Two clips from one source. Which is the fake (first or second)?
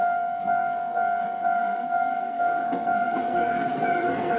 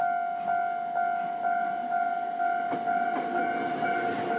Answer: first